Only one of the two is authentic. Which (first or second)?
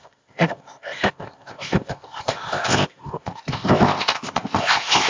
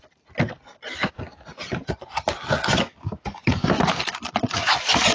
second